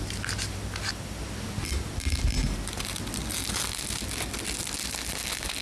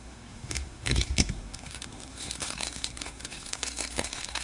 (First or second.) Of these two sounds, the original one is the first